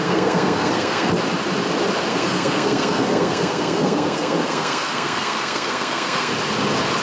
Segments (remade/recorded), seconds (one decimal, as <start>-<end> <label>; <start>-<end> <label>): 0.0-1.1 remade; 1.1-2.1 recorded; 2.1-6.3 remade; 6.3-7.0 recorded